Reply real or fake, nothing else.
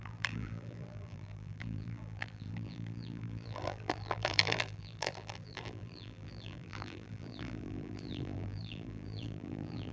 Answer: fake